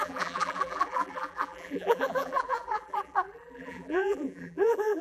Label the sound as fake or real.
fake